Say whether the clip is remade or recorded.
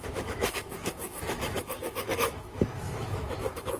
remade